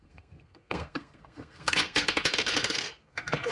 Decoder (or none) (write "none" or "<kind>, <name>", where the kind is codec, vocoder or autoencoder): codec, SNAC